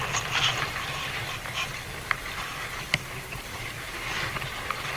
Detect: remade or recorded recorded